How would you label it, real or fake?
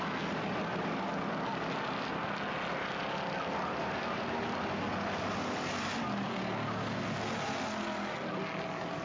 real